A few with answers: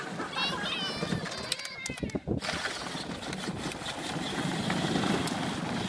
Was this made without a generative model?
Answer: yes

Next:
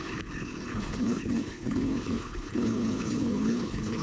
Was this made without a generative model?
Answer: no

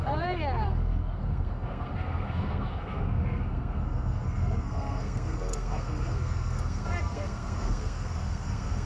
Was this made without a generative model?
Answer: no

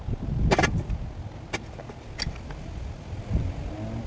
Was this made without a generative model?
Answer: yes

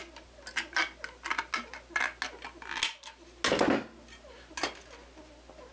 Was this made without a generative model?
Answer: yes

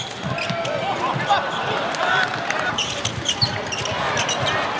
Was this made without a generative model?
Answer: yes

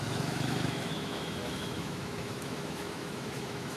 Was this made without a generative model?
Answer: no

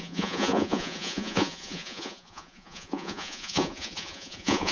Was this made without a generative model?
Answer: no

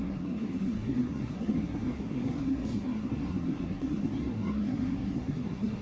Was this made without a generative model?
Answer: no